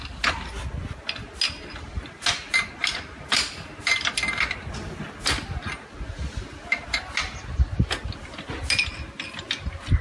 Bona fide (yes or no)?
yes